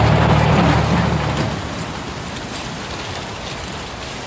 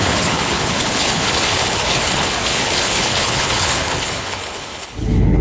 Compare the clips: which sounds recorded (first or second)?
first